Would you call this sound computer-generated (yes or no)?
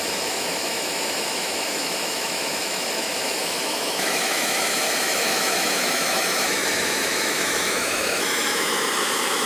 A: yes